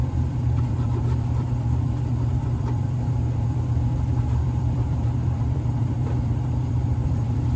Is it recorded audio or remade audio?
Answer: remade